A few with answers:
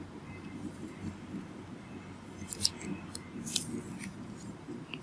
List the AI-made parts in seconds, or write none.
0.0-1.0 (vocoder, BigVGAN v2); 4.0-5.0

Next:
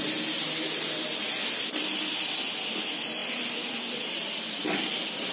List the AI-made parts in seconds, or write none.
3.2-4.8 (vocoder, BigVGAN v2)

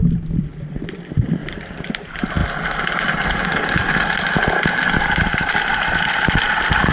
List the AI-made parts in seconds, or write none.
1.4-1.9 (vocoder, BigVGAN v2)

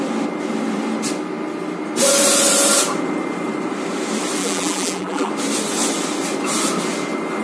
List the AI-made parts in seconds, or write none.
4.4-5.3 (vocoder, BigVGAN v2)

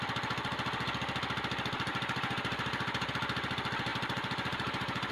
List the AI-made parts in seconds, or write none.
1.9-3.1 (vocoder, BigVGAN v2); 3.9-5.1

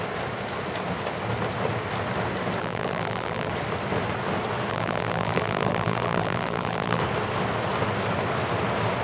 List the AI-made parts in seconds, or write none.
2.6-3.5 (vocoder, BigVGAN v2); 4.7-7.0